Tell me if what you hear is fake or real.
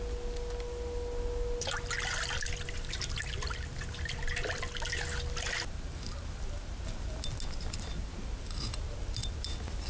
real